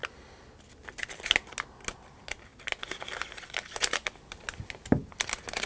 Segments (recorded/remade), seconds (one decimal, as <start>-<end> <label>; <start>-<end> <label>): 0.0-5.7 recorded